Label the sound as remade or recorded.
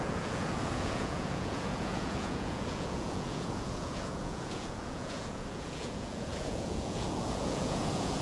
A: remade